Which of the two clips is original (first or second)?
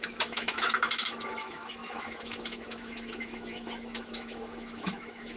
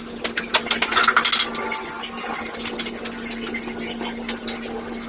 second